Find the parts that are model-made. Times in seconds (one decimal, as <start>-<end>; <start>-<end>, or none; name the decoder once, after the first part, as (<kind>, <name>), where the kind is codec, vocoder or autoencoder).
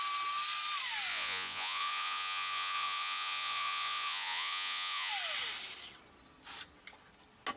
1.1-5.1 (vocoder, Vocos)